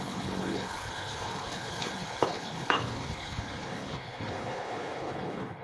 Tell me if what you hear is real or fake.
fake